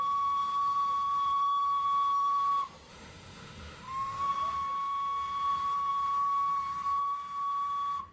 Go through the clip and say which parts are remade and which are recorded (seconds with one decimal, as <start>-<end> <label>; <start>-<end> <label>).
0.0-2.9 recorded; 2.9-4.3 remade; 4.3-8.1 recorded